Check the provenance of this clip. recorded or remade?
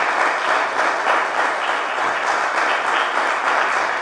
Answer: recorded